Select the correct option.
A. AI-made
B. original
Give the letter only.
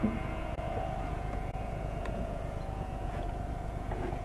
A